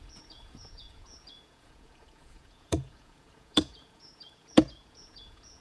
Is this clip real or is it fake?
fake